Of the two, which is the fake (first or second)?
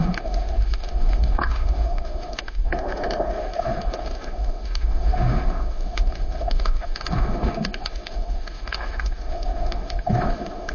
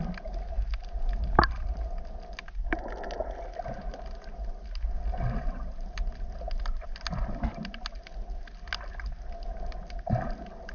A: first